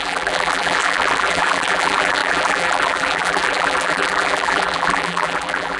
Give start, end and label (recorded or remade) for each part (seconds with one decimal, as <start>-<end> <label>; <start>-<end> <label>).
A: 0.0-5.8 remade